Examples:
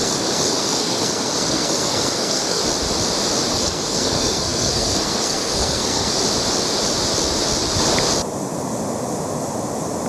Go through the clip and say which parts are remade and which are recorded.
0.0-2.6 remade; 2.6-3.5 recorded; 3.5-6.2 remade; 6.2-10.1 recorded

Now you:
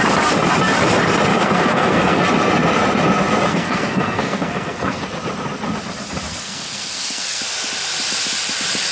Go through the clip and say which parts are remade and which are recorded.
0.0-1.3 recorded; 1.3-2.2 remade; 2.2-3.5 recorded; 3.5-5.0 remade; 5.0-6.3 recorded; 6.3-7.4 remade; 7.4-8.9 recorded